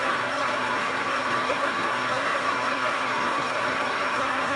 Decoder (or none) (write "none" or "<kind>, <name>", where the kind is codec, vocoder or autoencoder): codec, SNAC